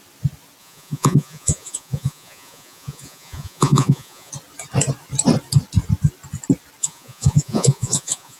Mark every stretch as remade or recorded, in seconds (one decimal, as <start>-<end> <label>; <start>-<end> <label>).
0.0-0.6 recorded; 0.6-4.3 remade; 4.3-6.8 recorded; 6.8-8.4 remade